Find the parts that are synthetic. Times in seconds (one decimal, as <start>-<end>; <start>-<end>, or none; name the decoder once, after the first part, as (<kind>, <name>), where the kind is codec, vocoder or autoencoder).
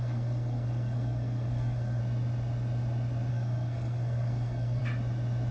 0.0-2.0 (codec, SNAC); 3.3-4.8